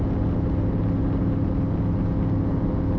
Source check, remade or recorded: recorded